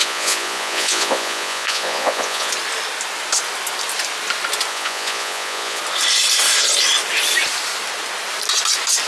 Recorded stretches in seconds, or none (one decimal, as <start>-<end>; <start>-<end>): 2.5-4.7; 5.8-9.1